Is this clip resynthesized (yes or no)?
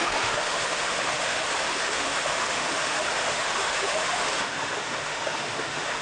yes